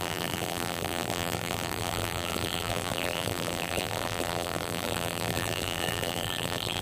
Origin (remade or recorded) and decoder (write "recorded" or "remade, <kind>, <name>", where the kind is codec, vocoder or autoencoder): remade, vocoder, BigVGAN v2